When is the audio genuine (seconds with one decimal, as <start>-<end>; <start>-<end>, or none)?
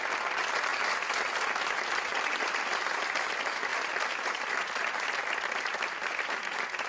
0.0-6.9